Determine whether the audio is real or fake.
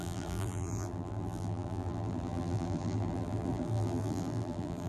fake